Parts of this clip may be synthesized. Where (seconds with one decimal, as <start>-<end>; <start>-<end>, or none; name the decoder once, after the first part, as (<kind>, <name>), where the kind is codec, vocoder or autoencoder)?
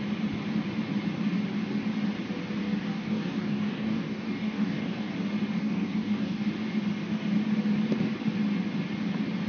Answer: 2.6-5.1 (codec, DAC); 5.6-6.5